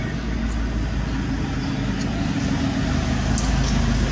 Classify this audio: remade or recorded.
recorded